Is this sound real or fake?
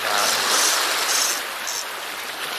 real